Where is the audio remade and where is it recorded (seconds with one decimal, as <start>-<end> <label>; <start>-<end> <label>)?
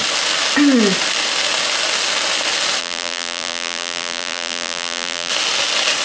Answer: 0.0-2.8 recorded; 2.8-5.3 remade; 5.3-6.0 recorded